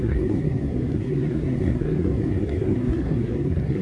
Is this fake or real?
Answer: fake